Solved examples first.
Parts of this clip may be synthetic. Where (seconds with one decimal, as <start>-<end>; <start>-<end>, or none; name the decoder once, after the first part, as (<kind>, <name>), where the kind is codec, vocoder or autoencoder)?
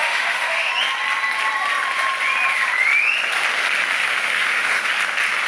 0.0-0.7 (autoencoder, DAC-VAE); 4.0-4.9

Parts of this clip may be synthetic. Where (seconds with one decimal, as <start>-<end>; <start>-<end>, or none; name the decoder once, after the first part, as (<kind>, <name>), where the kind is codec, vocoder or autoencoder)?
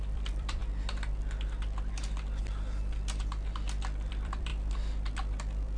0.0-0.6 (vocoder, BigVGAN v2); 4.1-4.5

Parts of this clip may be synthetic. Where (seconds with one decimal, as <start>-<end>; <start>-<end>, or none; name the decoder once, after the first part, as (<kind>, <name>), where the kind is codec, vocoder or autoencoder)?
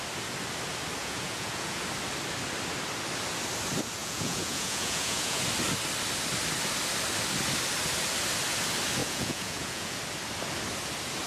1.0-1.8 (vocoder, Vocos); 4.0-5.4; 9.0-10.0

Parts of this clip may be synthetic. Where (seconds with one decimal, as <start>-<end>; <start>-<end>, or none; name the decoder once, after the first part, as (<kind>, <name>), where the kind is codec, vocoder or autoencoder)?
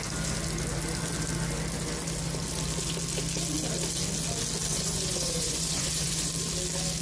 4.7-6.3 (vocoder, Vocos)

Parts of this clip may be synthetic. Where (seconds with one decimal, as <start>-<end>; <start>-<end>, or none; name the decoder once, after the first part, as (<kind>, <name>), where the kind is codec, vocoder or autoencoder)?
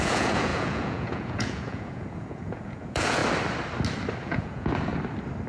0.0-3.2 (vocoder, Vocos); 4.2-4.9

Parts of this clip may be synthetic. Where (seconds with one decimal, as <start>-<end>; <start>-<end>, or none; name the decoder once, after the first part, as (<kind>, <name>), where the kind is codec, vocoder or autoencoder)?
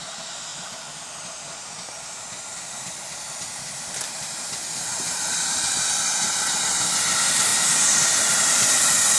none